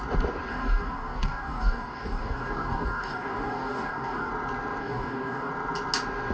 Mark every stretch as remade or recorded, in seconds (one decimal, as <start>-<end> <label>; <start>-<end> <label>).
0.0-0.5 recorded; 0.5-4.3 remade; 4.3-4.8 recorded; 4.8-5.5 remade; 5.5-6.3 recorded